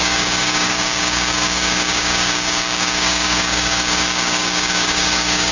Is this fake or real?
fake